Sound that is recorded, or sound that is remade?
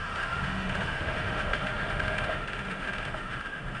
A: remade